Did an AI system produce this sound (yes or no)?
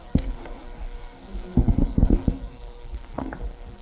yes